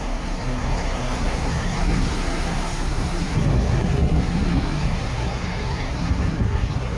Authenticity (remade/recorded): remade